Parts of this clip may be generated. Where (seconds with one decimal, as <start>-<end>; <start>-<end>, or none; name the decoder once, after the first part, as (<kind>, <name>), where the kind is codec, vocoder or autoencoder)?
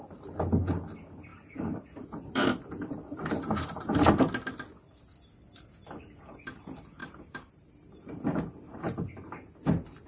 1.3-4.2 (vocoder, BigVGAN v2); 7.0-8.4